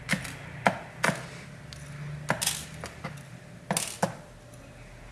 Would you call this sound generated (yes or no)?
no